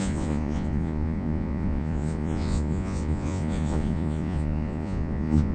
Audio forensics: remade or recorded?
remade